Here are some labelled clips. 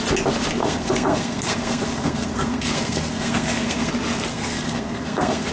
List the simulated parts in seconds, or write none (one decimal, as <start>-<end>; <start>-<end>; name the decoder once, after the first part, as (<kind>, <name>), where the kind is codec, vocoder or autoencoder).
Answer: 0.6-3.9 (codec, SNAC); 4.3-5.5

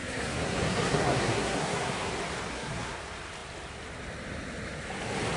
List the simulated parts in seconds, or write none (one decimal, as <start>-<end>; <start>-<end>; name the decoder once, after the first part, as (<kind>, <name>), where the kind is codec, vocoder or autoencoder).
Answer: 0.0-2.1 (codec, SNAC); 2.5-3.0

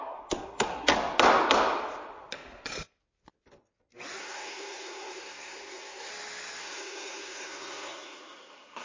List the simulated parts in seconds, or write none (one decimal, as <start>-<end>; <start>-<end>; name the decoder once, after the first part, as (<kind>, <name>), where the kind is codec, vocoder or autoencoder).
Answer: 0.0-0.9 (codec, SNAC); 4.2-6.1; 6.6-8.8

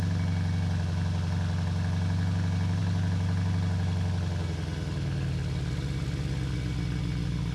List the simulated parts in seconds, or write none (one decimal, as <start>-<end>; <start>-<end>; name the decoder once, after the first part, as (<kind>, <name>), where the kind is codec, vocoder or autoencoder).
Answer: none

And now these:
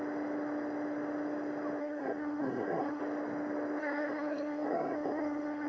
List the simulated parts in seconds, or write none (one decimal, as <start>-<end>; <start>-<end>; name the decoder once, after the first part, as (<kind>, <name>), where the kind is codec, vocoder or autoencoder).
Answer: 1.8-3.0 (codec, SNAC); 3.8-5.7

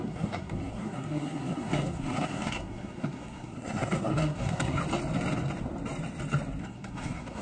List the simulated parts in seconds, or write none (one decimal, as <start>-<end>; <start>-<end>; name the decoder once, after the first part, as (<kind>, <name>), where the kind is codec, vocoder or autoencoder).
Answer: 0.0-4.8 (codec, SNAC); 6.6-7.4